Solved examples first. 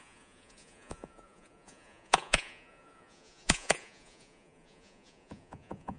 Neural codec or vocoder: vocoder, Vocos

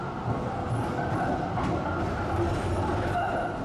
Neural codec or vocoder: none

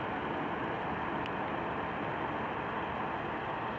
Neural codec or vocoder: none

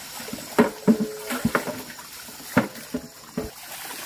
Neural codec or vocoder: none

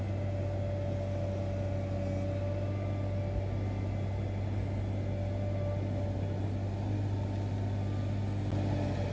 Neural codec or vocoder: none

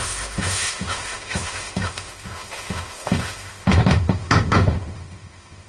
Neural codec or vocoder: autoencoder, DAC-VAE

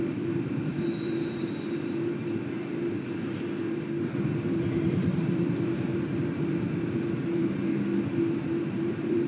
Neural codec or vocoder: vocoder, BigVGAN v2